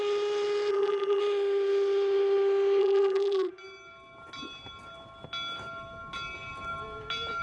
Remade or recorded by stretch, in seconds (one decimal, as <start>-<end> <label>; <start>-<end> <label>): 0.0-0.7 recorded; 0.7-1.2 remade; 1.2-2.8 recorded; 2.8-3.5 remade; 3.5-7.4 recorded